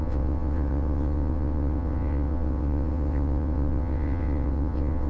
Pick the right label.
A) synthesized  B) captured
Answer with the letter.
A